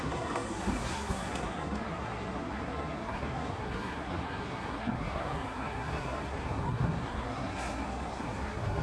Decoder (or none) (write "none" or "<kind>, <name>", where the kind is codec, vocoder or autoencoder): codec, SNAC